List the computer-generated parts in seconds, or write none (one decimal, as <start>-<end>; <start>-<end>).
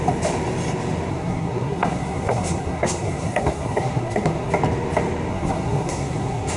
1.1-4.5; 5.3-6.6